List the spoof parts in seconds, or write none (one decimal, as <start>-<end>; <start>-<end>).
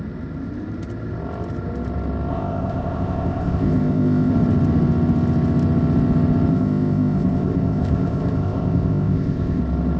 2.3-4.3; 6.5-9.6